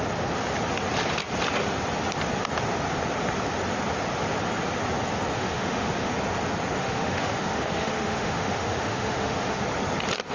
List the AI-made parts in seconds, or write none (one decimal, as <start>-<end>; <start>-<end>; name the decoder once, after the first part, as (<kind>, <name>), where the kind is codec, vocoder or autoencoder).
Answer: 5.3-6.1 (autoencoder, DAC-VAE); 6.8-9.6